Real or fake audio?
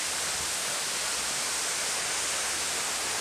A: real